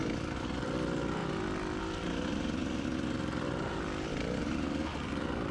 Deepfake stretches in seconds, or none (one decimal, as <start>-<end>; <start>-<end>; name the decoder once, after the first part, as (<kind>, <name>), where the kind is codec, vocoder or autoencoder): 0.0-1.2 (vocoder, BigVGAN v2); 1.8-5.5